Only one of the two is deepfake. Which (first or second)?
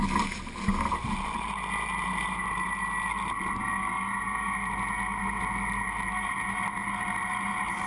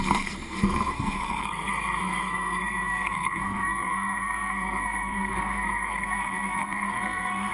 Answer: second